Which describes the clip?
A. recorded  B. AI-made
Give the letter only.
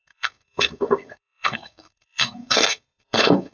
B